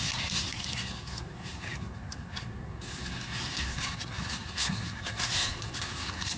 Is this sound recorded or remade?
remade